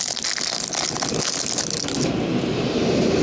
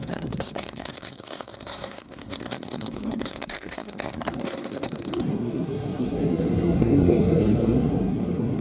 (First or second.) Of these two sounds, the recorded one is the first